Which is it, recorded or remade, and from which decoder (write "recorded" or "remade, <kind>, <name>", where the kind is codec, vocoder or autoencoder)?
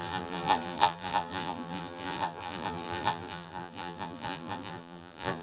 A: remade, vocoder, BigVGAN v2